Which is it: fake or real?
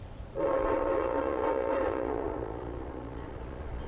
fake